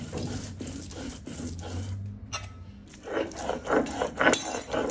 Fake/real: real